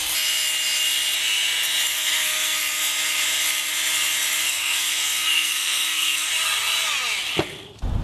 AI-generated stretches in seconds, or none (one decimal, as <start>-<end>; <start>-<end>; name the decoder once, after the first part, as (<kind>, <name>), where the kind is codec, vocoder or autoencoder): 1.9-2.6 (codec, SNAC); 4.4-6.3